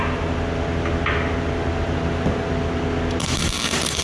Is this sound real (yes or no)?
yes